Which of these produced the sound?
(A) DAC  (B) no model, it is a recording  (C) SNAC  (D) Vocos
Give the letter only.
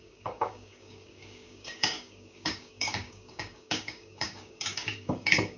A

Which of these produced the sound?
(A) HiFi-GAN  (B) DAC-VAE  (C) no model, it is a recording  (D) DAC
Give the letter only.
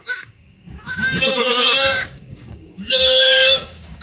D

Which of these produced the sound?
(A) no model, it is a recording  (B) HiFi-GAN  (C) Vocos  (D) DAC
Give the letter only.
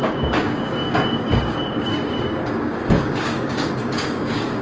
D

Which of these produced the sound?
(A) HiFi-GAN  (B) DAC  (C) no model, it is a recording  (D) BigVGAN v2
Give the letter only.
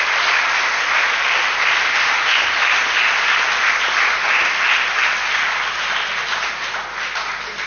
C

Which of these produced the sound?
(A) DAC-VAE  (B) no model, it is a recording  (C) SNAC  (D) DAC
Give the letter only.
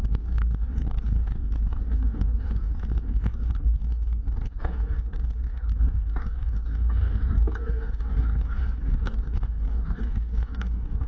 D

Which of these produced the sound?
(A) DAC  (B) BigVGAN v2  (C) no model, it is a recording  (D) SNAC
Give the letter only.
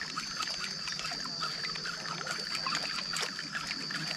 C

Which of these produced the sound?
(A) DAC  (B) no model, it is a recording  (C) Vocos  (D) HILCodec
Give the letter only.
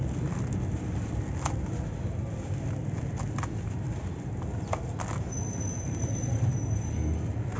B